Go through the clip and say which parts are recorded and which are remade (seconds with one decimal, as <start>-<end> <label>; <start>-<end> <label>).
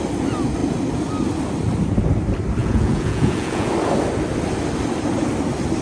0.0-2.6 recorded; 2.6-3.7 remade; 3.7-5.8 recorded